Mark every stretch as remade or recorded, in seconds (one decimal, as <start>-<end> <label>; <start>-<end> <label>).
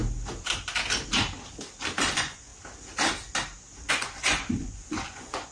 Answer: 0.0-2.1 recorded; 2.1-2.5 remade; 2.5-3.9 recorded; 3.9-5.5 remade